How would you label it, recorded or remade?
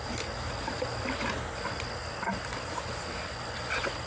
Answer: recorded